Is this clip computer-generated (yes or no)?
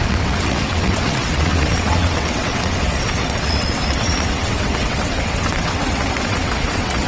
yes